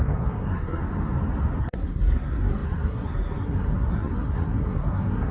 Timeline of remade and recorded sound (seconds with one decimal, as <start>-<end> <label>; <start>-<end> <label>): 0.0-0.8 remade; 0.8-1.6 recorded; 1.6-5.3 remade